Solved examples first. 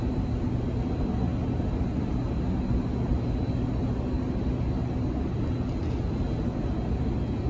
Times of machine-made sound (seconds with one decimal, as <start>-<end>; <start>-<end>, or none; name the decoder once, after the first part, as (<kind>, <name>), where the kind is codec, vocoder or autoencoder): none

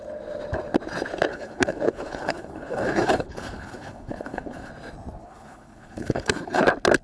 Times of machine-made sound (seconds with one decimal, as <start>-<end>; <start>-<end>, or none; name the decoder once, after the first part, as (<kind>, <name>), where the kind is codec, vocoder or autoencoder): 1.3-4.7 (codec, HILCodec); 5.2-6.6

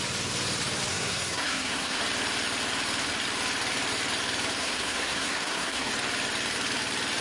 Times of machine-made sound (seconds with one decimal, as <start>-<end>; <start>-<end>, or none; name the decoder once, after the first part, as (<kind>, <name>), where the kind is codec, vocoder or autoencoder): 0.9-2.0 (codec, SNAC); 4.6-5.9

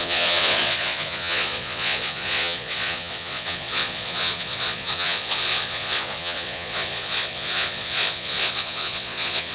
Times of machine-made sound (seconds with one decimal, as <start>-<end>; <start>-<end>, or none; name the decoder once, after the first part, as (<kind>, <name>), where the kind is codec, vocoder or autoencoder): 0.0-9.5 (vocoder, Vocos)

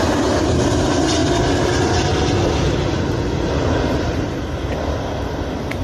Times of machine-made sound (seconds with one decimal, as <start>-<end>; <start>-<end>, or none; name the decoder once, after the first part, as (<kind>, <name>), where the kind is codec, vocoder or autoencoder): none

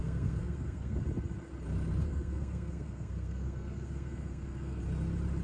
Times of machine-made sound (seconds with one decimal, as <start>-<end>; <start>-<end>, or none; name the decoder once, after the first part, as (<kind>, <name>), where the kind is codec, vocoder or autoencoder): 0.0-1.0 (codec, SNAC); 2.0-4.8

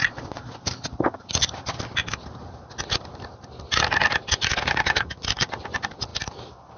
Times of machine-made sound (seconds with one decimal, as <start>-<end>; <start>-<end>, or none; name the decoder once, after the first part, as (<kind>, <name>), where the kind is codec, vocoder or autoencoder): 0.0-0.5 (vocoder, Vocos)

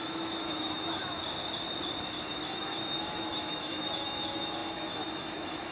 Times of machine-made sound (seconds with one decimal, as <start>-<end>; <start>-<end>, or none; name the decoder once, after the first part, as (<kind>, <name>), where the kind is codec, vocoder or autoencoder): 0.0-1.2 (autoencoder, DAC-VAE); 2.5-5.7